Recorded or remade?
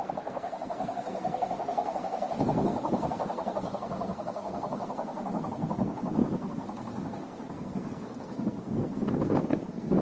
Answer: remade